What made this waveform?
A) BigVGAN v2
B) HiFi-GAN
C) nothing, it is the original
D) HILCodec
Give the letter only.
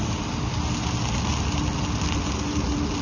C